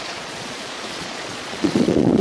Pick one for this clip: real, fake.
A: fake